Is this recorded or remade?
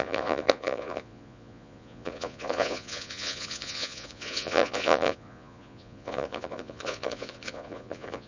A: remade